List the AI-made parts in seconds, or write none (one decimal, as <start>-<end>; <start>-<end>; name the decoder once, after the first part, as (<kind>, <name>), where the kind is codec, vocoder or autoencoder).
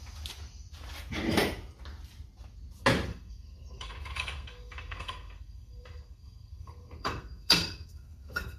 3.1-8.6 (codec, SNAC)